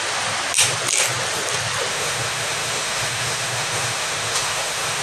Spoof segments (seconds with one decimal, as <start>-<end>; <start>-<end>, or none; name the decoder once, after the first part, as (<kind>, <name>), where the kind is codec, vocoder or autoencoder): 1.9-5.0 (autoencoder, DAC-VAE)